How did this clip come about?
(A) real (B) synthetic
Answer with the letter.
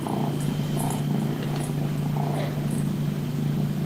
A